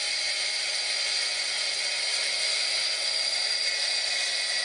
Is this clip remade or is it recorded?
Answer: recorded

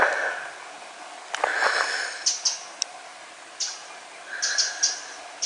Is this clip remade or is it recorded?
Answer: recorded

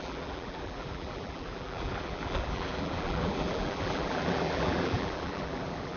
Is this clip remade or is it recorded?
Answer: remade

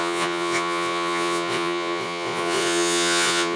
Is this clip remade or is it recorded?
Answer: remade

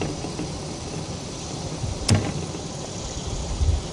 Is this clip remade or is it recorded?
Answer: remade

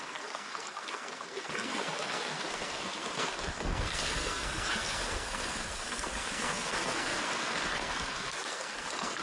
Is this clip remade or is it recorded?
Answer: remade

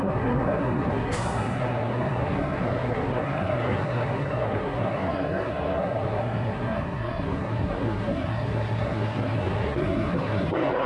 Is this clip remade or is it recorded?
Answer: remade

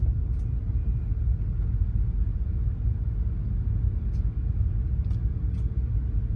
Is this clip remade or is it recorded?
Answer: recorded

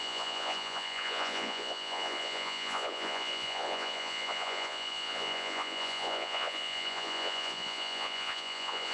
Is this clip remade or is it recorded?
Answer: remade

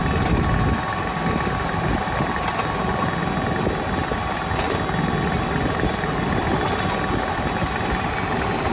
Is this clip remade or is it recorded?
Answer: recorded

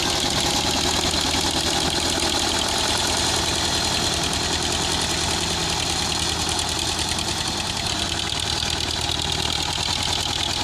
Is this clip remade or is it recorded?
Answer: recorded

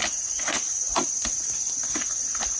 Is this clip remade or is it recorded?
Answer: recorded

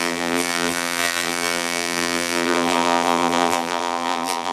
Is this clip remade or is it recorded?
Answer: remade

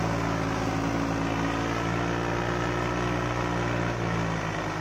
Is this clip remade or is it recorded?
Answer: recorded